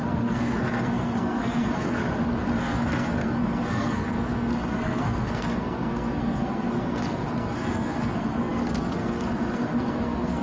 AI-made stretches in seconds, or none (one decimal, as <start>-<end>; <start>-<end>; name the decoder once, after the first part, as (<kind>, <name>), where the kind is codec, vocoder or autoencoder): 0.0-2.0 (codec, SNAC); 2.6-10.4